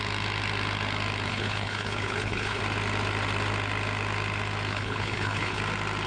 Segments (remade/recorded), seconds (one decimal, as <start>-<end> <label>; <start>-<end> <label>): 0.0-1.3 recorded; 1.3-2.6 remade; 2.6-4.7 recorded; 4.7-5.6 remade; 5.6-6.1 recorded